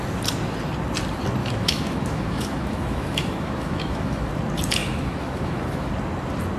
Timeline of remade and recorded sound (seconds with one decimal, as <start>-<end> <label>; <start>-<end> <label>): 0.0-1.4 recorded; 1.4-4.3 remade; 4.3-4.8 recorded; 4.8-5.9 remade; 5.9-6.6 recorded